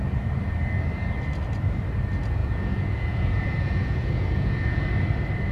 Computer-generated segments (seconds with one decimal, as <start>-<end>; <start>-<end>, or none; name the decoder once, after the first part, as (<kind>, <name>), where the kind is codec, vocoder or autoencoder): 2.4-4.8 (vocoder, Vocos)

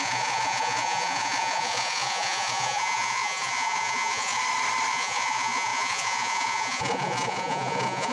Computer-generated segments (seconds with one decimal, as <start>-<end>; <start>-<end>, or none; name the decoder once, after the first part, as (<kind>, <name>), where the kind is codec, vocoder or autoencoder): 0.0-4.4 (vocoder, Vocos); 4.9-8.1

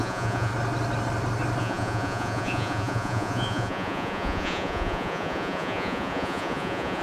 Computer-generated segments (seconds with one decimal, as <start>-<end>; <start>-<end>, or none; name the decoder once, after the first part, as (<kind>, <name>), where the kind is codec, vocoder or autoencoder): 0.0-0.5 (vocoder, Vocos); 1.6-7.0

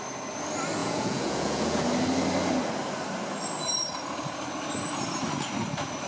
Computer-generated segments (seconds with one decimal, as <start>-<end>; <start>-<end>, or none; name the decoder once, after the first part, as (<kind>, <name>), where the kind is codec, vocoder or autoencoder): 0.8-1.8 (vocoder, Vocos)

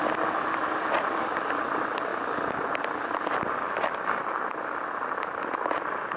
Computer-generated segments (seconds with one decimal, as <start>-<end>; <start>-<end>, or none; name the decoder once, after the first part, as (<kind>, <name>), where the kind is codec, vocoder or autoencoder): none

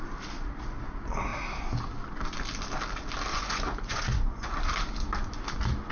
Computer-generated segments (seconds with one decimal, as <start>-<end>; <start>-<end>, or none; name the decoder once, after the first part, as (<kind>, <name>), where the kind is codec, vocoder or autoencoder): 3.3-4.6 (vocoder, Vocos)